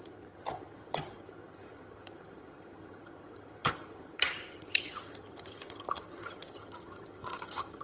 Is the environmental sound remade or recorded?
remade